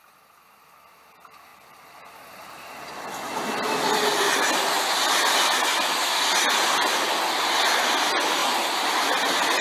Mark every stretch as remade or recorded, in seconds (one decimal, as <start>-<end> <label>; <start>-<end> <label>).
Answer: 0.0-9.6 recorded